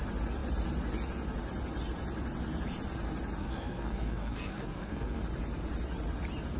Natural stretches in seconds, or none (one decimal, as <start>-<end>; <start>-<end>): 0.0-3.4; 5.2-6.6